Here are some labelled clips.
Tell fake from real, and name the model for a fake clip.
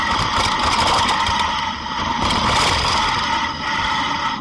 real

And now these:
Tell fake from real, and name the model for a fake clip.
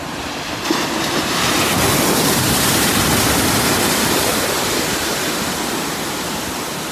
real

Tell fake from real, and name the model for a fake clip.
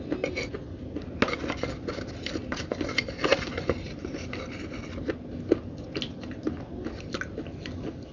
real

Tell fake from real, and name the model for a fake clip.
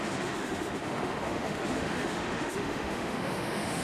fake, autoencoder, DAC-VAE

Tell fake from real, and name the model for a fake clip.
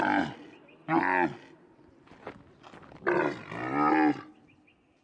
real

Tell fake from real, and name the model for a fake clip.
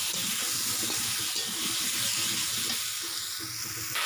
real